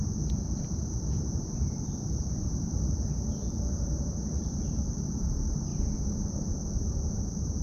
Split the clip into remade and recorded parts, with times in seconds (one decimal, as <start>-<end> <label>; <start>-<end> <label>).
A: 0.0-3.4 recorded; 3.4-4.9 remade; 4.9-5.7 recorded; 5.7-6.5 remade; 6.5-7.6 recorded